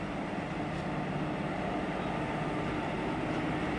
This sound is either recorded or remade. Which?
recorded